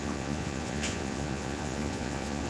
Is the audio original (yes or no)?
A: no